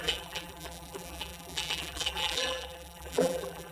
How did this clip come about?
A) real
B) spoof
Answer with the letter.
B